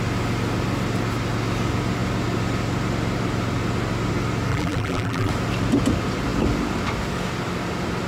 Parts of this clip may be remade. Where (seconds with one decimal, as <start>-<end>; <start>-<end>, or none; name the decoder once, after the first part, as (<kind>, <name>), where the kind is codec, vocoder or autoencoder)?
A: 4.5-5.3 (vocoder, BigVGAN v2)